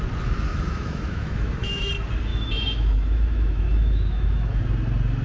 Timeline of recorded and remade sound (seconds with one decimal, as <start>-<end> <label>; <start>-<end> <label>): 0.0-0.5 recorded; 0.5-1.9 remade; 1.9-2.3 recorded; 2.3-4.6 remade; 4.6-5.2 recorded